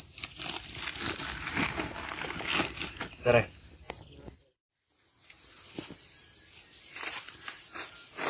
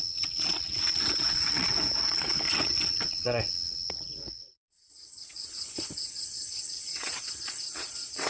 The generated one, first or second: second